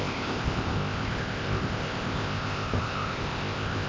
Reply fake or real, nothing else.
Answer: fake